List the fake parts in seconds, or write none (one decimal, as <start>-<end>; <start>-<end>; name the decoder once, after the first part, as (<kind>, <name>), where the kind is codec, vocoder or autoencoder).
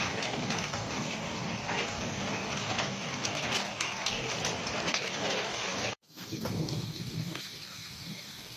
0.0-4.3 (codec, DAC); 4.9-8.6